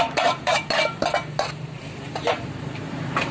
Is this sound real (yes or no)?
no